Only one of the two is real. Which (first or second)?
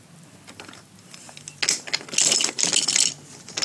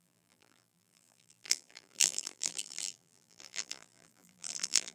first